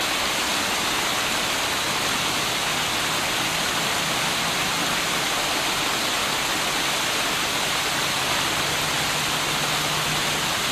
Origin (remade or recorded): recorded